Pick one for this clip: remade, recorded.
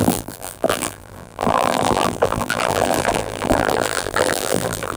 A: remade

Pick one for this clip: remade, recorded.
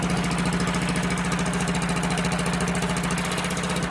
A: recorded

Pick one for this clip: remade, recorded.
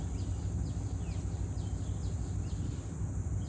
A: recorded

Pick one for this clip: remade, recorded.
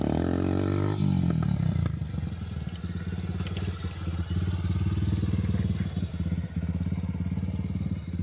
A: recorded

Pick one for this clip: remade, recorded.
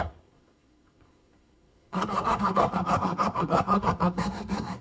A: remade